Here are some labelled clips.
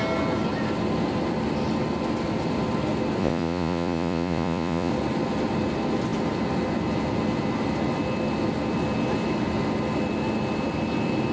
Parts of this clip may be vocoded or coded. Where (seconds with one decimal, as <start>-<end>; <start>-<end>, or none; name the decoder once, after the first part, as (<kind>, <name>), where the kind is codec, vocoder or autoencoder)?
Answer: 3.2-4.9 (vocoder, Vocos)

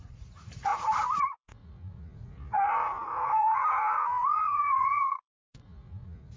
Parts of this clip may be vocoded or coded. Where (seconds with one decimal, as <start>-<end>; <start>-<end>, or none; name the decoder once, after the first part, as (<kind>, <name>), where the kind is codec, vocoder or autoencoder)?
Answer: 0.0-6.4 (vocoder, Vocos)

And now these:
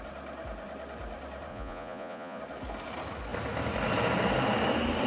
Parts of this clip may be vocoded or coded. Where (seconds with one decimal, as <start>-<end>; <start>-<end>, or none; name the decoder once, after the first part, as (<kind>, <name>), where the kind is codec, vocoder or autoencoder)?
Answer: 1.5-2.4 (vocoder, Vocos)